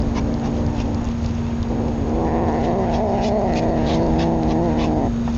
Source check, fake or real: real